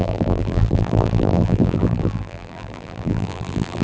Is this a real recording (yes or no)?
no